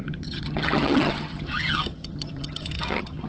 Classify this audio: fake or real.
fake